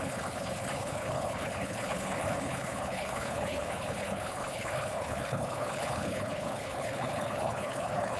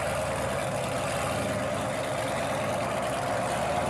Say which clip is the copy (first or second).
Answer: first